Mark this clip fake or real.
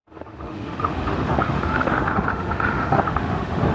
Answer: fake